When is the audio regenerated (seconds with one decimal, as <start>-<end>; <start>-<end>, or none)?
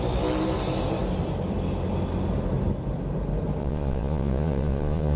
3.6-5.2